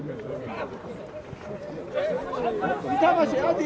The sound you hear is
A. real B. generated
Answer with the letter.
A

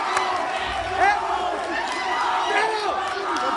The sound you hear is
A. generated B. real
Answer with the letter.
B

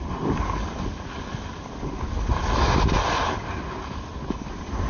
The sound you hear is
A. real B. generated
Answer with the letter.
A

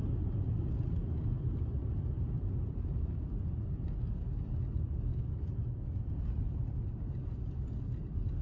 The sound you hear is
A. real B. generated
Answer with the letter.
A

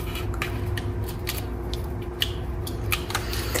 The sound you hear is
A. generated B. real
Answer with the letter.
B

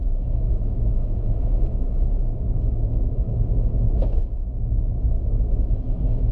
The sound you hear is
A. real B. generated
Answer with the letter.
B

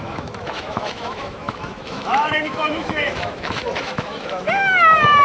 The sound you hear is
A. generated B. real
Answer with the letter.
A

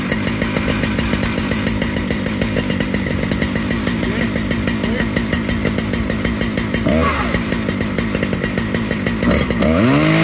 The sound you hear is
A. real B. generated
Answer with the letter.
A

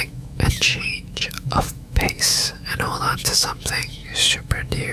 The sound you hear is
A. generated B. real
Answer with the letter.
A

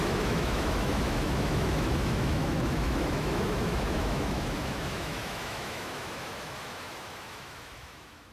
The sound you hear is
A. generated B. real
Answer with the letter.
A